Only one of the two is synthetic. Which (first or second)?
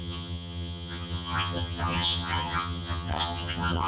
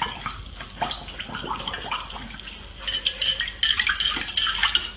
first